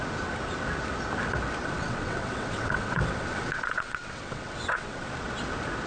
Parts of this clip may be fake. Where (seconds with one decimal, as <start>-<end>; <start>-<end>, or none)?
1.6-5.1